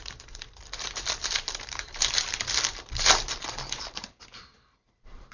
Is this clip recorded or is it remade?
remade